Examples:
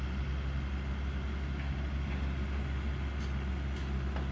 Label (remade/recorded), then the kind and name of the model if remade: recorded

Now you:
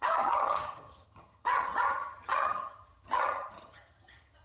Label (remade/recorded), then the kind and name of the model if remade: remade, vocoder, HiFi-GAN